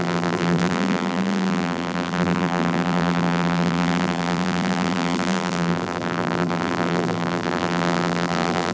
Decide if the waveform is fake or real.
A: fake